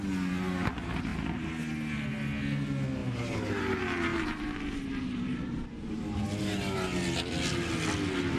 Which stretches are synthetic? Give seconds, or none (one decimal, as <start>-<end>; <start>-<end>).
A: 3.0-3.5; 4.1-6.0